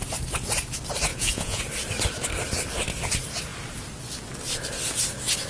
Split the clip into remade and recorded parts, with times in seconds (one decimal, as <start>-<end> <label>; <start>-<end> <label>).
0.0-1.1 recorded; 1.1-1.6 remade; 1.6-5.5 recorded